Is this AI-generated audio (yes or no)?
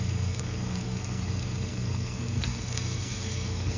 yes